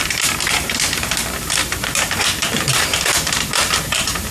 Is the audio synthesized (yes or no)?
yes